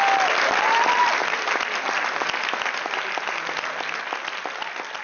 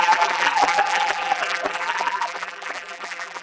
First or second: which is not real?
second